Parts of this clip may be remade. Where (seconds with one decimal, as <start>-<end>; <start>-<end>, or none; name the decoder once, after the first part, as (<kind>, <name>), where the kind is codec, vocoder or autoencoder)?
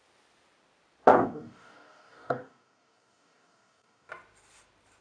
1.1-4.1 (codec, DAC)